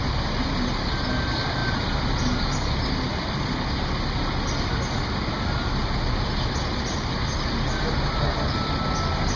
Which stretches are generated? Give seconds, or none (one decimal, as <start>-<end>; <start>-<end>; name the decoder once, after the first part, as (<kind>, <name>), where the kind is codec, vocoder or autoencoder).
none